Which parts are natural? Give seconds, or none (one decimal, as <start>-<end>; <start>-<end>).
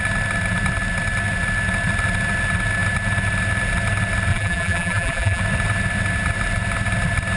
0.0-4.3; 5.4-7.4